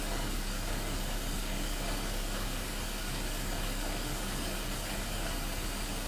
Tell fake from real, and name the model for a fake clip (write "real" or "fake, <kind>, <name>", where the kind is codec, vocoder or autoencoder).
fake, codec, DAC